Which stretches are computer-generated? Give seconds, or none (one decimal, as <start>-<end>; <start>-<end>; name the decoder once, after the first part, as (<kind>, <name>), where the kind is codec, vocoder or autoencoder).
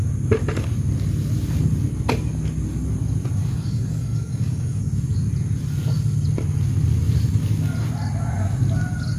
3.4-4.8 (codec, DAC)